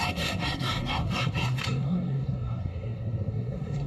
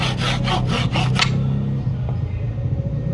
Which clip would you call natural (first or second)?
second